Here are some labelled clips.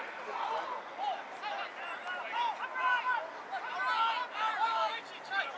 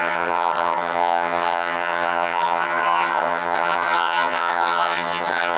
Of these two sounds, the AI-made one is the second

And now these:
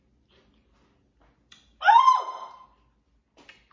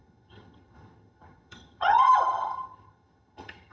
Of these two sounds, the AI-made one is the second